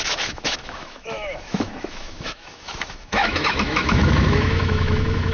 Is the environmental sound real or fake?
fake